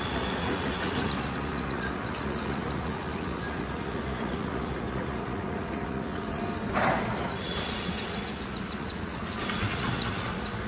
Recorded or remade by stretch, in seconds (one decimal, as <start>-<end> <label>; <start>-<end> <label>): 0.0-6.4 remade; 6.4-7.1 recorded; 7.1-10.7 remade